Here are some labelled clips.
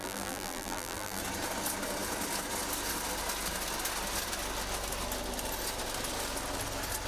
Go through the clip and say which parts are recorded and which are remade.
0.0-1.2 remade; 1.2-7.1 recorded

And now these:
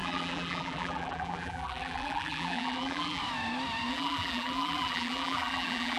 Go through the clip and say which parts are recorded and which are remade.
0.0-3.2 remade; 3.2-3.9 recorded; 3.9-6.0 remade

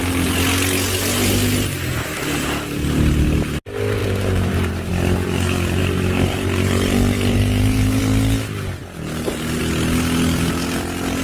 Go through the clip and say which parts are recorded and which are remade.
0.0-4.0 recorded; 4.0-4.9 remade; 4.9-5.8 recorded; 5.8-8.0 remade; 8.0-8.8 recorded; 8.8-9.6 remade; 9.6-11.2 recorded